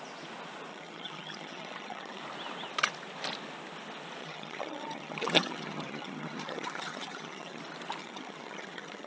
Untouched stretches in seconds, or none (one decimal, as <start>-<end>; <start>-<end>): 0.0-0.7; 2.2-4.2; 7.6-8.0